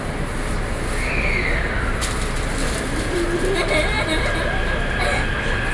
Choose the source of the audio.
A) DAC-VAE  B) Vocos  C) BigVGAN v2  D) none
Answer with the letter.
D